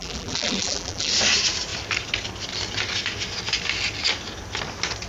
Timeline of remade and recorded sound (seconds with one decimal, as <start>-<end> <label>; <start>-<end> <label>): 0.0-1.1 remade; 1.1-5.1 recorded